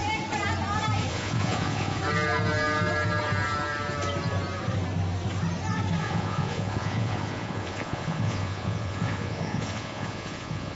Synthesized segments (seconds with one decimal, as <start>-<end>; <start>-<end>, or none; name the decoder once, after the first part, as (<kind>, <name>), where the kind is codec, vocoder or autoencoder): 1.1-2.0 (vocoder, Vocos); 6.0-10.7